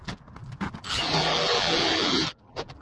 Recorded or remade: remade